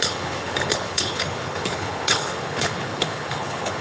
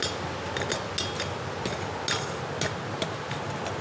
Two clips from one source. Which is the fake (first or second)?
first